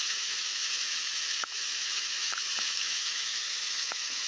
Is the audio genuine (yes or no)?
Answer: no